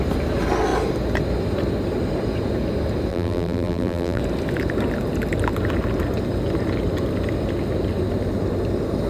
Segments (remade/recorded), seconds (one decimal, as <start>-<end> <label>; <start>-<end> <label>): 0.0-3.1 recorded; 3.1-4.2 remade; 4.2-9.1 recorded